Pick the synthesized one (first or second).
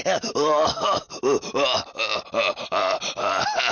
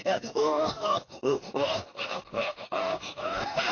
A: second